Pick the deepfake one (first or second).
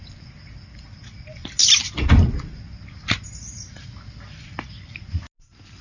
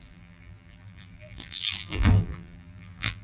second